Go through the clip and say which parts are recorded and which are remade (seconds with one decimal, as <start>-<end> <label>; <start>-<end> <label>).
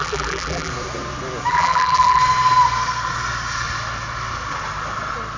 0.0-0.7 remade; 0.7-1.5 recorded; 1.5-2.2 remade; 2.2-5.4 recorded